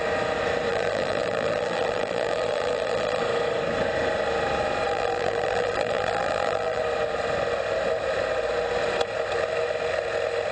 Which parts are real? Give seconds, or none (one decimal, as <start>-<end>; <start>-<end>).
0.0-0.7; 3.2-4.9; 6.8-10.5